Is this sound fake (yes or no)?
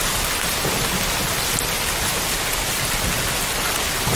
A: no